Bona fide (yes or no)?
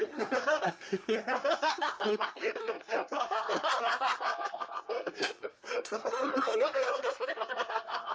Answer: no